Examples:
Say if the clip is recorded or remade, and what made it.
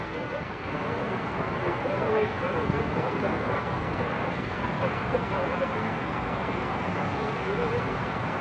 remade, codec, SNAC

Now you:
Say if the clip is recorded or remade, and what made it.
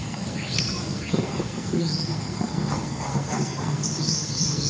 remade, codec, SNAC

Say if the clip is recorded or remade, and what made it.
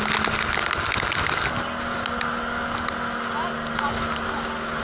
recorded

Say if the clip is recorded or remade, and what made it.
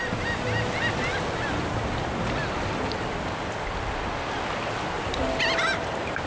recorded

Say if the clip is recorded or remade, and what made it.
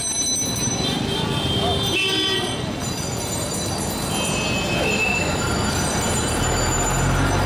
recorded